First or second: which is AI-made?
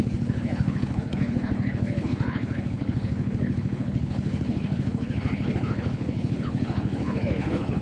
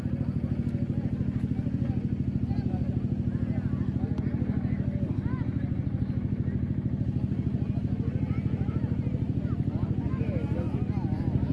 first